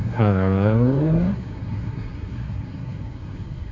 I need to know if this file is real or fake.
fake